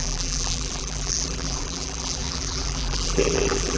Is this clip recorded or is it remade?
remade